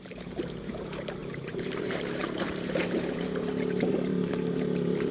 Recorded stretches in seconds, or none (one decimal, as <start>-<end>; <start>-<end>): none